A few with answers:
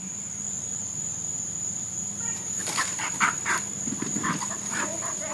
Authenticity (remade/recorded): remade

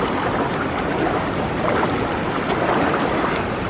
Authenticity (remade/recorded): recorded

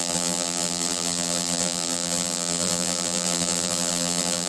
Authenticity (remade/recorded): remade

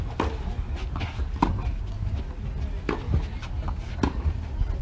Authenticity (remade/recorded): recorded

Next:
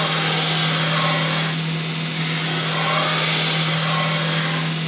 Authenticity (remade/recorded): recorded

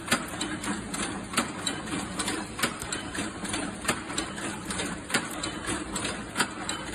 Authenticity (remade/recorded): remade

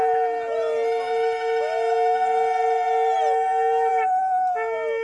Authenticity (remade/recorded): recorded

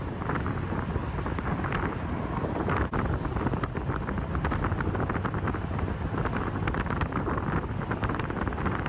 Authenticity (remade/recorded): remade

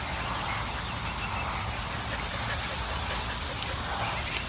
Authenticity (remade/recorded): recorded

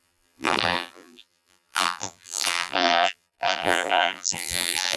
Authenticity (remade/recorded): remade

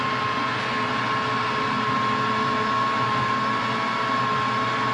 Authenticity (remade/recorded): recorded